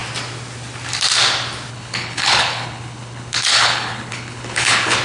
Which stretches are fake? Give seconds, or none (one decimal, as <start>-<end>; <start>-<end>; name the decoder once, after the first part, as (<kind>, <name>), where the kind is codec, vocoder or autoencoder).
1.7-5.0 (codec, HILCodec)